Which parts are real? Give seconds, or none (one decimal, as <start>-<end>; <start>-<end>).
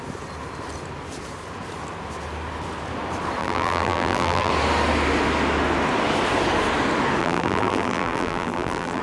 0.0-3.4; 4.5-7.2